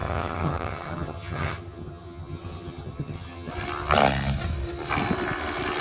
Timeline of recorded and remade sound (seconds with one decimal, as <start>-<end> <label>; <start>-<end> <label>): 0.0-3.5 remade; 3.5-5.8 recorded